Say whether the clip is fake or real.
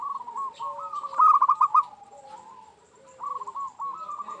real